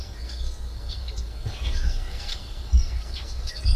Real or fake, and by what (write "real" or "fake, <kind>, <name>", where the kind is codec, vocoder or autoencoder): fake, codec, SNAC